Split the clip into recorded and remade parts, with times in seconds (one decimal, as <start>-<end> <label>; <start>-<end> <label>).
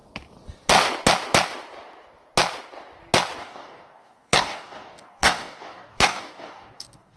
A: 0.0-3.4 recorded; 3.4-7.2 remade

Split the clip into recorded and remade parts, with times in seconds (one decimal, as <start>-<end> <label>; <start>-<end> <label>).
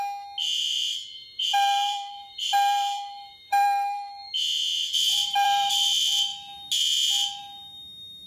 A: 0.0-0.9 recorded; 0.9-4.3 remade; 4.3-5.0 recorded; 5.0-5.7 remade; 5.7-8.3 recorded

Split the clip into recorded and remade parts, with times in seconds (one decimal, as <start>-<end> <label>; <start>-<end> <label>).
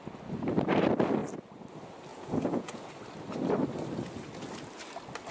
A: 0.0-2.1 recorded; 2.1-2.9 remade; 2.9-5.3 recorded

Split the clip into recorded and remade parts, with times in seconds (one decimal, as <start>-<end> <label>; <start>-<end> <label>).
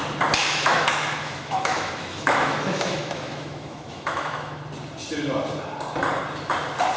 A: 0.0-0.4 recorded; 0.4-4.6 remade; 4.6-7.0 recorded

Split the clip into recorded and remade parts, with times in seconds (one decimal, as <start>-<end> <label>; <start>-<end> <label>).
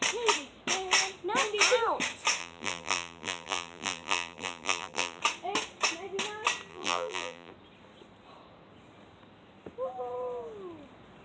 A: 0.0-2.4 recorded; 2.4-5.2 remade; 5.2-6.7 recorded; 6.7-7.5 remade; 7.5-11.2 recorded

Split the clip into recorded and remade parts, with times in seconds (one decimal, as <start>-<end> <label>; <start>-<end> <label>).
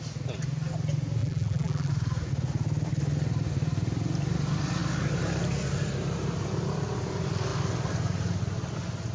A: 0.0-1.2 recorded; 1.2-1.9 remade; 1.9-9.1 recorded